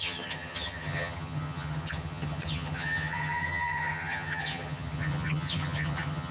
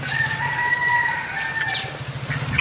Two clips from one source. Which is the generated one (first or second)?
first